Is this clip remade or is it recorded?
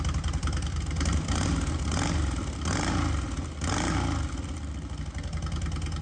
recorded